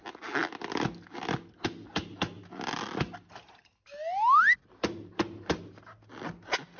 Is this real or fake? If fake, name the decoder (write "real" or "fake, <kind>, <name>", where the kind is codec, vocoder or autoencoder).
real